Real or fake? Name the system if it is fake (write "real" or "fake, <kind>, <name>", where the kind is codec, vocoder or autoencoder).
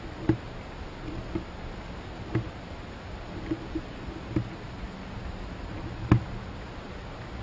real